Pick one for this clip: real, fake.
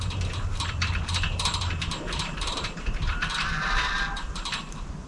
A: fake